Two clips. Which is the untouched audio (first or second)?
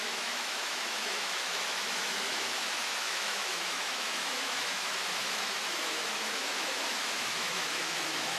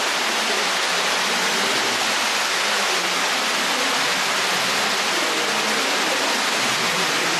second